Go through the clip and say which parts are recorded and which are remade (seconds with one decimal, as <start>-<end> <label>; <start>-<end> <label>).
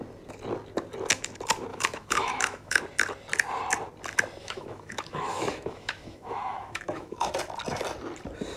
0.0-1.7 recorded; 1.7-2.8 remade; 2.8-4.4 recorded; 4.4-7.3 remade; 7.3-8.6 recorded